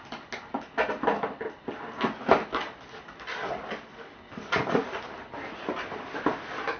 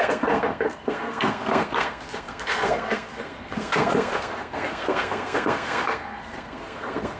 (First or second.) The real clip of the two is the first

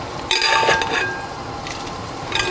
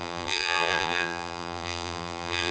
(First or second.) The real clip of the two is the first